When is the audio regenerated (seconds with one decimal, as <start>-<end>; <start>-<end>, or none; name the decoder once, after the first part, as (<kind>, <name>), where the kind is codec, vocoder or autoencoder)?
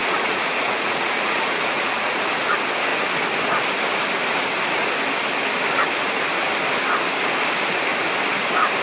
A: 0.0-2.3 (vocoder, Vocos)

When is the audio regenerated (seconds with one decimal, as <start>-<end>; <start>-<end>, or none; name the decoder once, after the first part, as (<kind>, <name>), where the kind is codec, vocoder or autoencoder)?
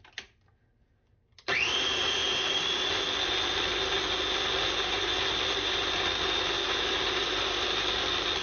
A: none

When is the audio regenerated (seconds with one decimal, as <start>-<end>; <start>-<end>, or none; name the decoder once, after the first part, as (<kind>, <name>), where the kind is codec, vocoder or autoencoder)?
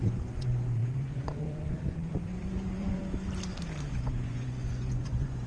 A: 0.0-3.0 (vocoder, Vocos); 3.9-5.5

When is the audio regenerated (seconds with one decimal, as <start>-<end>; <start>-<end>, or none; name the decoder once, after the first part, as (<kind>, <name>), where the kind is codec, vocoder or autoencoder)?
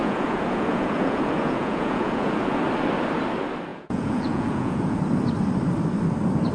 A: 0.0-2.6 (vocoder, Vocos); 3.7-5.0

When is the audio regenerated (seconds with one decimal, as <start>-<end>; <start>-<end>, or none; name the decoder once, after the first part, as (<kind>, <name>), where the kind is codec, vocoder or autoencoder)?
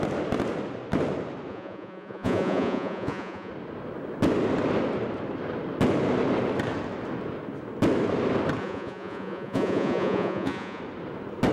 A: 1.5-3.5 (vocoder, Vocos); 8.6-10.8